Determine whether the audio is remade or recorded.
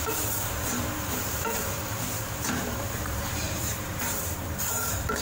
remade